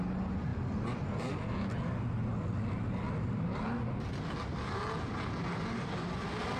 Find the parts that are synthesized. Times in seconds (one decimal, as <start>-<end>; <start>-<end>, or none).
none